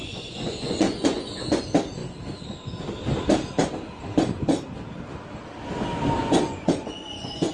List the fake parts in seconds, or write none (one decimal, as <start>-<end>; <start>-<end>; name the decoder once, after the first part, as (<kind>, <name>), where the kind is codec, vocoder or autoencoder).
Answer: 0.0-1.6 (vocoder, Vocos); 6.2-7.5